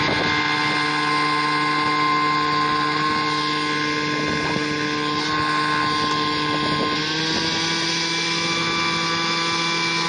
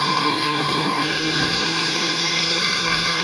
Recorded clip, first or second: first